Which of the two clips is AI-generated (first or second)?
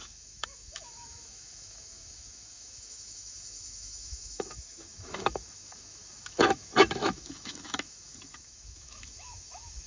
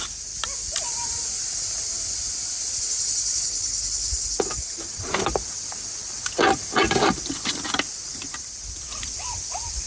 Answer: first